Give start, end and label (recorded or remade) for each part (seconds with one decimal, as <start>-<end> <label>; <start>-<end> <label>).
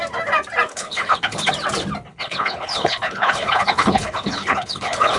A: 0.0-0.7 recorded; 0.7-1.5 remade; 1.5-2.1 recorded; 2.1-5.2 remade